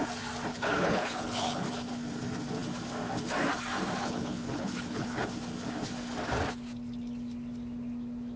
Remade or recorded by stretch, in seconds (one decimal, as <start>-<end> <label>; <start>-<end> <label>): 0.0-0.5 recorded; 0.5-1.7 remade; 1.7-4.0 recorded; 4.0-5.2 remade; 5.2-8.4 recorded